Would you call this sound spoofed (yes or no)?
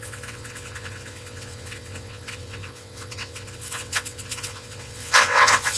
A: yes